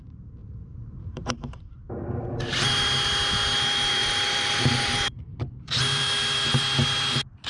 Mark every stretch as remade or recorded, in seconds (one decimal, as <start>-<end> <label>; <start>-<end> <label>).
0.0-0.4 recorded; 0.4-1.6 remade; 1.6-4.0 recorded; 4.0-5.4 remade; 5.4-7.5 recorded